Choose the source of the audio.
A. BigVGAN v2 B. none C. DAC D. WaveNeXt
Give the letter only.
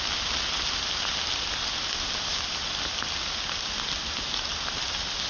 B